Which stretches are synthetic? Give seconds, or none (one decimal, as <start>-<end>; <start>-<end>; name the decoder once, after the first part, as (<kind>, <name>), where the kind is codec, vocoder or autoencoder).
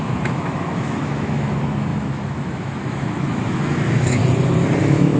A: 0.0-4.2 (autoencoder, DAC-VAE); 4.8-5.2